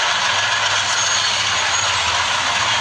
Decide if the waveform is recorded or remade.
recorded